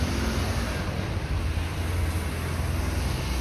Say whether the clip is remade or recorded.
recorded